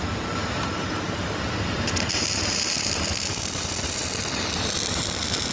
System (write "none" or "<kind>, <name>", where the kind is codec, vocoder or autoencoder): none